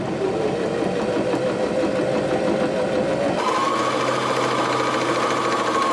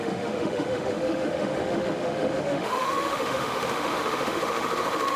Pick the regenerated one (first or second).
second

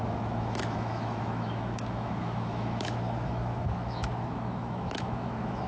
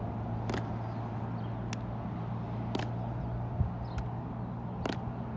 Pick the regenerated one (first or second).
first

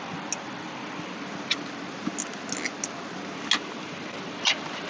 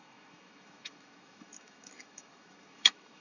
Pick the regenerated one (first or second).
second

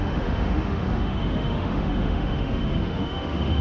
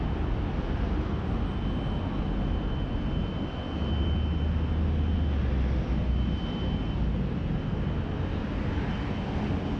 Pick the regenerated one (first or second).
first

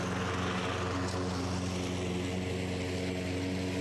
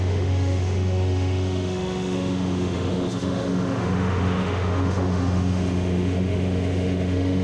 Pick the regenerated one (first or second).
second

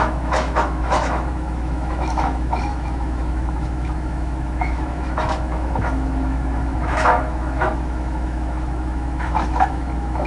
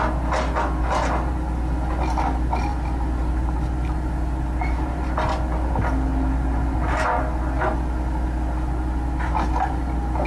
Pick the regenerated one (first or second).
first